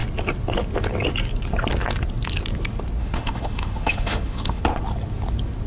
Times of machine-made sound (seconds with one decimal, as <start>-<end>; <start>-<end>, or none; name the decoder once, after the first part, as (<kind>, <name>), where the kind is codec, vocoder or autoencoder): 3.0-4.6 (autoencoder, DAC-VAE)